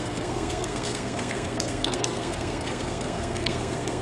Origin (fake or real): fake